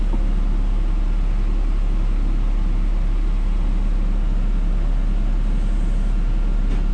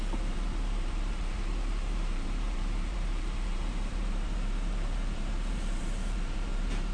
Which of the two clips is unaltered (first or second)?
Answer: first